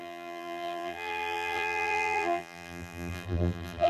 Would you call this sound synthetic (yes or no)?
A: yes